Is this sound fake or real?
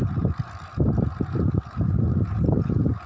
real